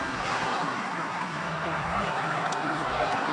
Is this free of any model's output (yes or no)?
no